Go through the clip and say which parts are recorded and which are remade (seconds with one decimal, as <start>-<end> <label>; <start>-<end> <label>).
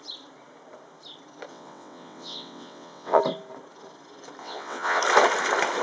0.0-1.5 recorded; 1.5-3.2 remade; 3.2-4.4 recorded; 4.4-5.0 remade; 5.0-5.8 recorded